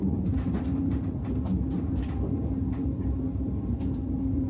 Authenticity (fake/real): fake